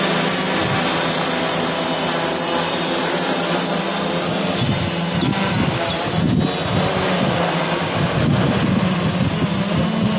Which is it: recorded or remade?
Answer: recorded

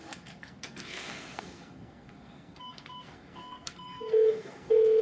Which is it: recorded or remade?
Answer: remade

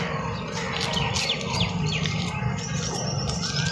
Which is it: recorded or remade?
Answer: recorded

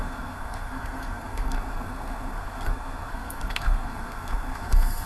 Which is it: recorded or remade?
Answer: remade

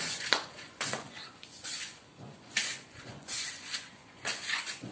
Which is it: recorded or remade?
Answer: remade